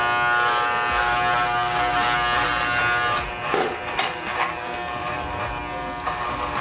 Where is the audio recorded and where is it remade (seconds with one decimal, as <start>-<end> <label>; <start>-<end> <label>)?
0.0-5.0 recorded; 5.0-5.5 remade; 5.5-6.6 recorded